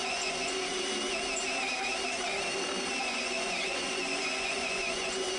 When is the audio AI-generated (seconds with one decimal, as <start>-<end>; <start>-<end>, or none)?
0.0-0.7; 3.0-5.4